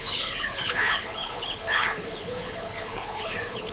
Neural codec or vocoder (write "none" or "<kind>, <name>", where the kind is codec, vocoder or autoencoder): codec, HILCodec